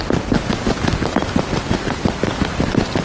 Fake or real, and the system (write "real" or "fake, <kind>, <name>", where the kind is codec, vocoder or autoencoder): real